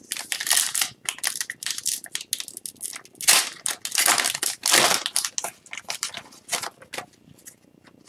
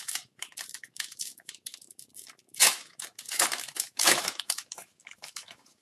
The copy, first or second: second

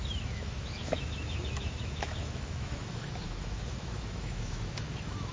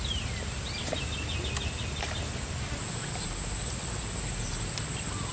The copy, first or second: first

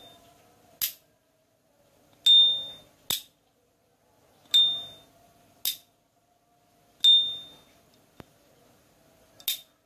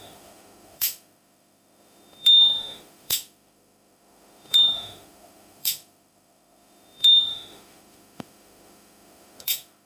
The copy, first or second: second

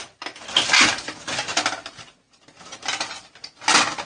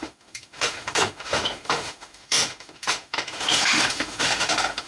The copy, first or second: second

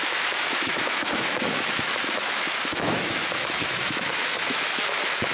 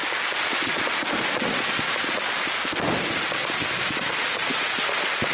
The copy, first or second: first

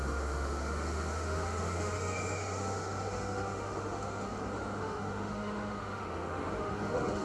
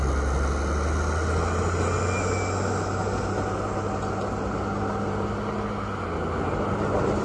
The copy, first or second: first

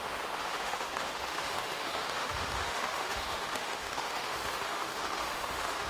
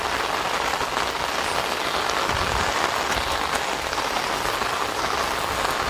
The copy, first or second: first